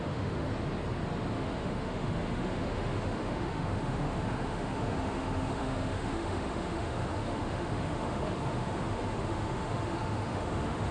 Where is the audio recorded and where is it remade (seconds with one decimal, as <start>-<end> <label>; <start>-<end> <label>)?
0.0-0.5 remade; 0.5-1.3 recorded; 1.3-10.9 remade